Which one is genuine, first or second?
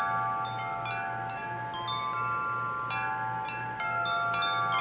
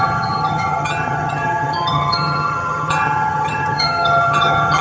first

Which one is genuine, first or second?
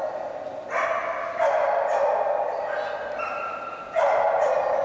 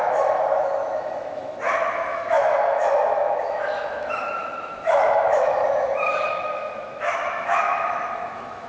first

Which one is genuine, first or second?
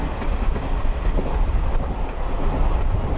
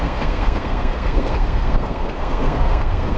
first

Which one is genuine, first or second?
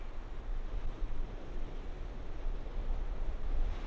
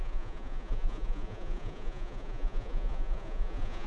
first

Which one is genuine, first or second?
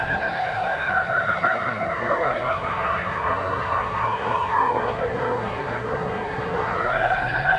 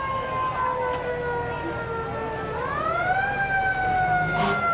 second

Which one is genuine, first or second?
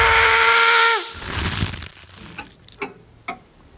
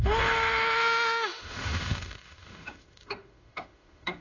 first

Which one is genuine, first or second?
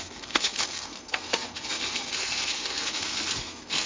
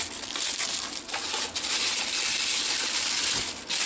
second